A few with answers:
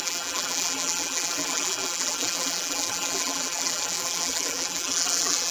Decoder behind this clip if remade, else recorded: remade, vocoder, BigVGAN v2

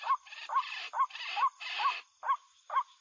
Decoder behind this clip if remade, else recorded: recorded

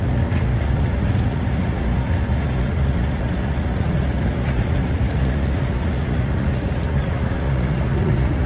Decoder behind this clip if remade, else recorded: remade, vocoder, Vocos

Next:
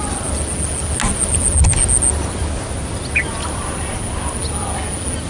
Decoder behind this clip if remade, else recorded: recorded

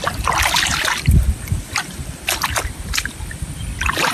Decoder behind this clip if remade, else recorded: recorded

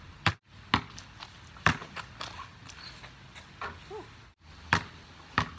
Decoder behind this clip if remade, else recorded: recorded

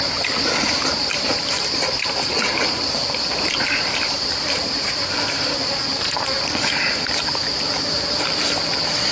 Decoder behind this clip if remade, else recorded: remade, vocoder, BigVGAN v2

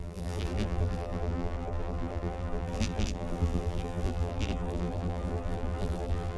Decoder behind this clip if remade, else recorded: remade, vocoder, BigVGAN v2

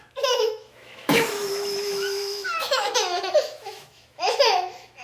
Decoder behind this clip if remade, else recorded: remade, autoencoder, DAC-VAE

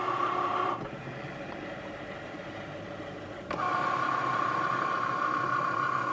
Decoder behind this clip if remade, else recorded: remade, vocoder, BigVGAN v2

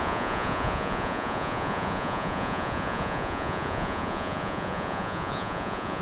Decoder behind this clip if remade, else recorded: remade, vocoder, Vocos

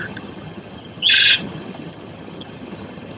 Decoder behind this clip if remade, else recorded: remade, vocoder, HiFi-GAN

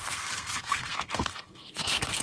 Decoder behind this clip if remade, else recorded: remade, codec, SNAC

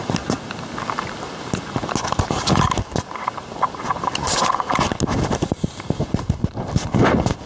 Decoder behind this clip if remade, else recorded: recorded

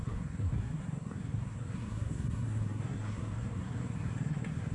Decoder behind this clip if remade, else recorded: remade, codec, SNAC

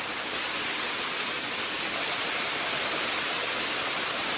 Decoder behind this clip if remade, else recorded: recorded